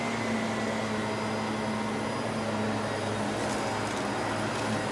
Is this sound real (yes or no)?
yes